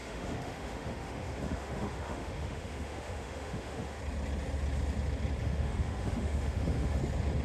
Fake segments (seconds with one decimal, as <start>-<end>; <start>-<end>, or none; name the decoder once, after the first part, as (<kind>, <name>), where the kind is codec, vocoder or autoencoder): 0.0-4.0 (autoencoder, DAC-VAE); 5.4-7.0